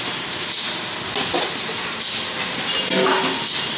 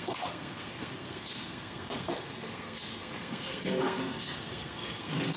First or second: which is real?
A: first